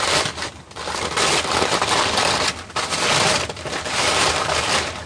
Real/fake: real